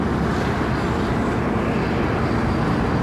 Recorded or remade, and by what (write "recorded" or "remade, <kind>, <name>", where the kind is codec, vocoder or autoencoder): recorded